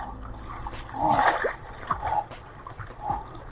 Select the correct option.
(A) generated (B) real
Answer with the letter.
B